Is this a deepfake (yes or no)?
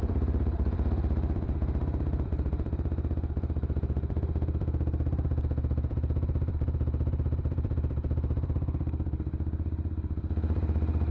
yes